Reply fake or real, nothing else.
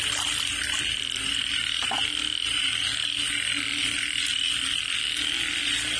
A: real